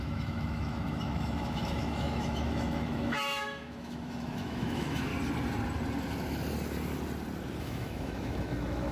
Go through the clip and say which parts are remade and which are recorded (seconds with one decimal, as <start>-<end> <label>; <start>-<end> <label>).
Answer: 0.0-5.1 remade; 5.1-7.6 recorded; 7.6-8.9 remade